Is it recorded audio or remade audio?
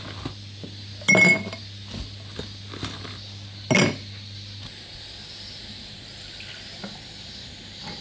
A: recorded